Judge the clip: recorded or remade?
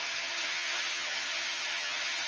remade